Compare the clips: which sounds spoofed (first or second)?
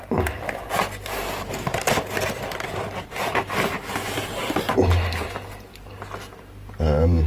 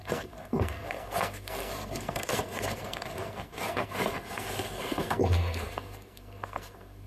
second